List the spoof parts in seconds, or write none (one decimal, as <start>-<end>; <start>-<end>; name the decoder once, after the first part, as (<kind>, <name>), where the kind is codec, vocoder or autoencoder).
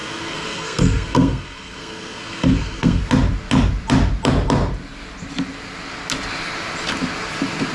0.0-3.0 (codec, SNAC)